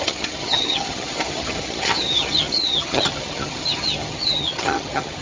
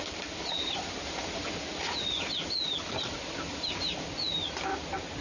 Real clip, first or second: second